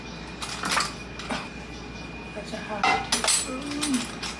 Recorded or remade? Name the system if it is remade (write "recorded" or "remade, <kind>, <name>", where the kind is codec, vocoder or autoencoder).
recorded